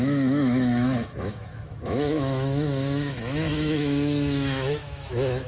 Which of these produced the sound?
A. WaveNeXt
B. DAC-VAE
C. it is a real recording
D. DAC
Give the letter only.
B